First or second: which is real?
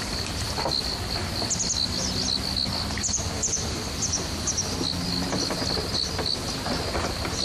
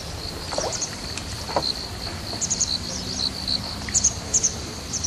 first